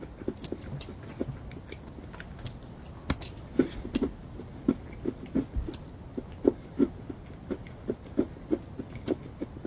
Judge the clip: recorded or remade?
recorded